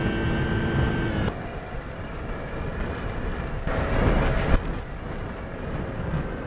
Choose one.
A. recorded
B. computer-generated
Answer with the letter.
A